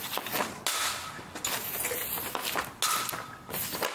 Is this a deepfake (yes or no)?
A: no